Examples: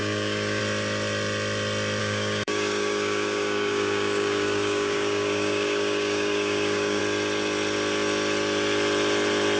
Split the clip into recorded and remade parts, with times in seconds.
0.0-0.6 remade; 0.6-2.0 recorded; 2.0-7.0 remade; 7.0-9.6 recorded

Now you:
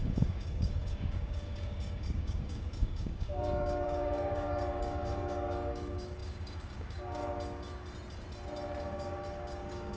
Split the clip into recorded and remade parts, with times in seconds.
0.0-7.2 remade; 7.2-8.8 recorded; 8.8-10.0 remade

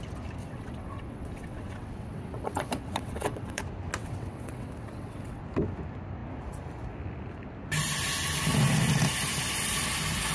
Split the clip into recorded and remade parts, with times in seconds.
0.0-0.4 recorded; 0.4-3.6 remade; 3.6-4.0 recorded; 4.0-5.4 remade; 5.4-10.3 recorded

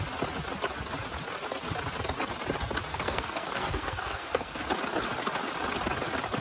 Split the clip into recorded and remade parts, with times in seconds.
0.0-2.9 recorded; 2.9-4.6 remade; 4.6-6.4 recorded

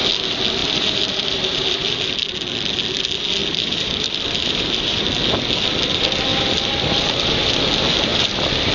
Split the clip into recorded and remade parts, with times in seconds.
0.0-0.6 recorded; 0.6-2.3 remade; 2.3-3.4 recorded; 3.4-5.0 remade; 5.0-6.3 recorded; 6.3-7.6 remade; 7.6-8.1 recorded; 8.1-8.7 remade